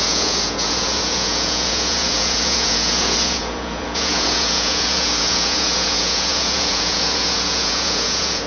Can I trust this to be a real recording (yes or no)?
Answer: no